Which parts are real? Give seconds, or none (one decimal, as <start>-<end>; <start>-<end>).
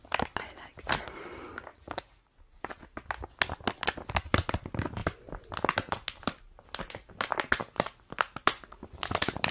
0.0-1.7; 2.4-9.5